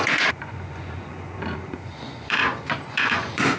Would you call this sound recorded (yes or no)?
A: no